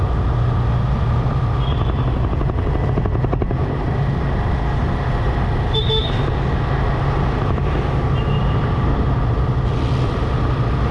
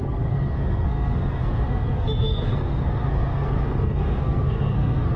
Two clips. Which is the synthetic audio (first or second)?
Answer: second